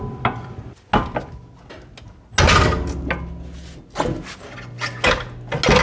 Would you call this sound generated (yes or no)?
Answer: no